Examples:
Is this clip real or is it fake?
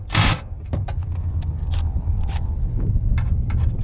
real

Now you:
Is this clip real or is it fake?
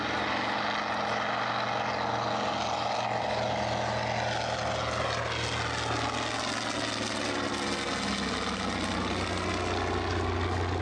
real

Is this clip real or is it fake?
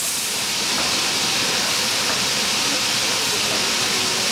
real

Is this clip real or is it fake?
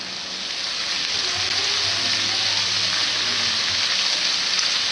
real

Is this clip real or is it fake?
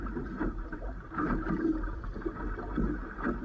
fake